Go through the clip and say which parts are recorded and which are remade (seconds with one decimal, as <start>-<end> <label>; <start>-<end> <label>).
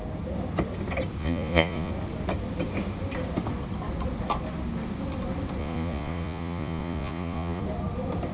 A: 0.0-1.2 recorded; 1.2-1.9 remade; 1.9-5.6 recorded; 5.6-7.6 remade; 7.6-8.3 recorded